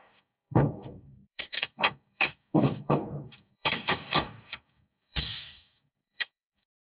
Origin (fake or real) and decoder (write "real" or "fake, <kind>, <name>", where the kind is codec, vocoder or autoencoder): fake, codec, DAC